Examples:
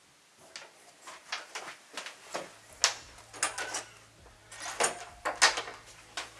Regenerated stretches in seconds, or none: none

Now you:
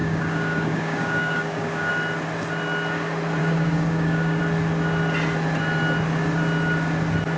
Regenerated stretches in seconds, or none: 0.0-1.9 (codec, DAC); 3.4-4.4

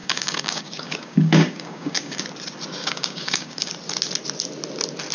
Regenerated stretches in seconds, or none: 0.0-2.2 (codec, DAC); 2.8-3.7